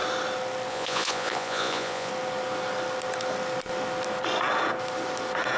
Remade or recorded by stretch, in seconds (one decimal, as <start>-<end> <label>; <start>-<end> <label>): 0.0-0.7 recorded; 0.7-2.1 remade; 2.1-5.6 recorded